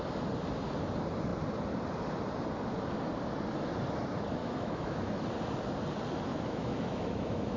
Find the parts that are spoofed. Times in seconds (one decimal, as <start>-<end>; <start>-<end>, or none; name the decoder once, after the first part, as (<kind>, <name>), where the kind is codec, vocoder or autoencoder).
4.4-5.2 (autoencoder, DAC-VAE); 6.3-7.6